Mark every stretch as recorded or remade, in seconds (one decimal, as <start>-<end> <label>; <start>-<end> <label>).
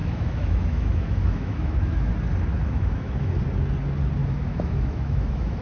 0.0-2.1 remade; 2.1-2.5 recorded; 2.5-3.4 remade; 3.4-4.2 recorded; 4.2-5.6 remade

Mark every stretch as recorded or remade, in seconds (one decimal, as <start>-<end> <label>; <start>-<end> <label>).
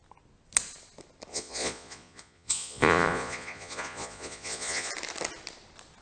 0.0-1.3 recorded; 1.3-4.9 remade; 4.9-6.0 recorded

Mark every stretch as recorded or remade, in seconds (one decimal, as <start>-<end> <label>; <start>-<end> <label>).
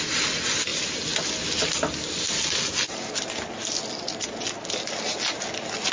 0.0-5.9 recorded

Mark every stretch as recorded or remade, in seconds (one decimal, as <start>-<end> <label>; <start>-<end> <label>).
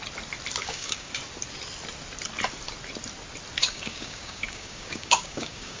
0.0-0.6 recorded; 0.6-1.1 remade; 1.1-3.6 recorded; 3.6-5.8 remade